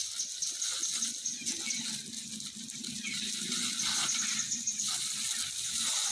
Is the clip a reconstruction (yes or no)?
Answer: no